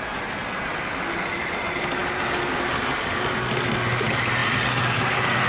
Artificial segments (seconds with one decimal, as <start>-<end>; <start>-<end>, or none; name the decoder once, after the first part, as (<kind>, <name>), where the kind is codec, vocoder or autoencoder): none